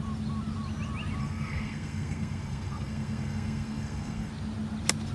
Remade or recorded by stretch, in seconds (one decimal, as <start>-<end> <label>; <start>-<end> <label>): 0.0-1.2 recorded; 1.2-4.3 remade; 4.3-5.1 recorded